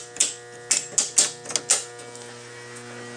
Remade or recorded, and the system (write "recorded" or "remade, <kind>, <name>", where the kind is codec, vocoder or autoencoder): recorded